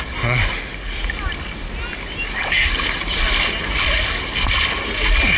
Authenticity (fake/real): real